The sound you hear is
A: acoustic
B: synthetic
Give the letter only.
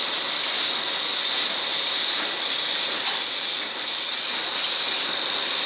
A